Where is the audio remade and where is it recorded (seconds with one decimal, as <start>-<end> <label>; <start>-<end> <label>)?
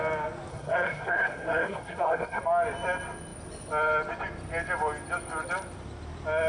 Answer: 0.0-0.5 recorded; 0.5-2.4 remade; 2.4-6.5 recorded